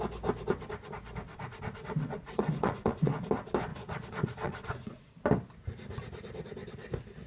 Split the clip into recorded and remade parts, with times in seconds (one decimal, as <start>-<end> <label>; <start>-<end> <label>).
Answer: 0.0-1.3 recorded; 1.3-3.3 remade; 3.3-3.7 recorded; 3.7-5.1 remade; 5.1-7.3 recorded